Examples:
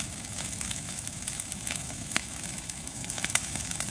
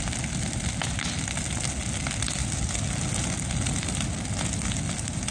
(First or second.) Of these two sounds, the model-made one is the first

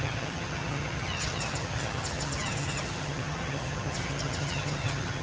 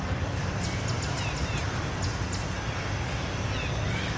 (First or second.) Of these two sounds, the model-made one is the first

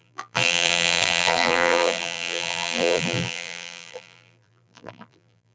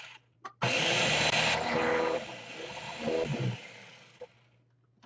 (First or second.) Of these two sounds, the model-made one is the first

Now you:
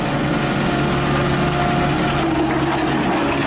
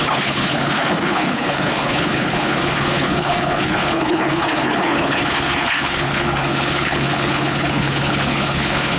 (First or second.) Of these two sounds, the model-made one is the second